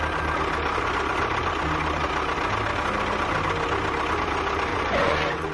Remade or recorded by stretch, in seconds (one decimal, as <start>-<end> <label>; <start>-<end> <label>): 0.0-4.7 recorded; 4.7-5.5 remade